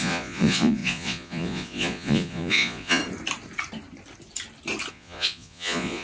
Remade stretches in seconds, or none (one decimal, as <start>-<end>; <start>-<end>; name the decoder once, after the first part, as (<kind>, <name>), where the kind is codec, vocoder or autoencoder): 0.0-3.0 (vocoder, Vocos); 4.9-6.0